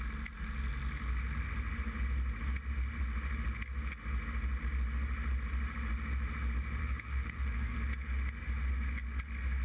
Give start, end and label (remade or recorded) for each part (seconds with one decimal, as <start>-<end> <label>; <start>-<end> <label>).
0.0-6.8 recorded; 6.8-7.8 remade; 7.8-9.6 recorded